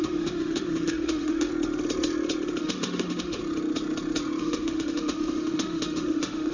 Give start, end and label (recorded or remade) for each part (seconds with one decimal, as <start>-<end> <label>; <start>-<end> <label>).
0.0-1.5 remade; 1.5-2.6 recorded; 2.6-3.4 remade; 3.4-4.4 recorded; 4.4-6.5 remade